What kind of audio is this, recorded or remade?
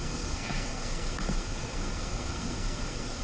remade